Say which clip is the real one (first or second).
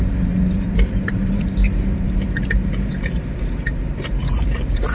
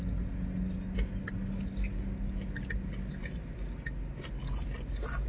second